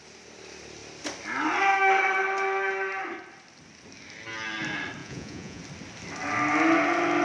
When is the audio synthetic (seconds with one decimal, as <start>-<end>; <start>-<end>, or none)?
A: 5.0-5.6